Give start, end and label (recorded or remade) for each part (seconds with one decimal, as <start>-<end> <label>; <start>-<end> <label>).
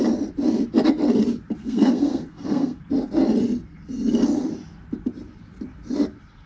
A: 0.0-1.6 recorded; 1.6-2.8 remade; 2.8-6.5 recorded